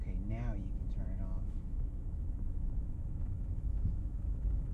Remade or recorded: remade